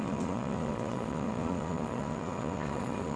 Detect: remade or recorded remade